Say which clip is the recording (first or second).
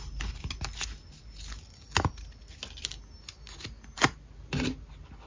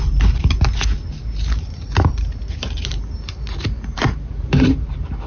first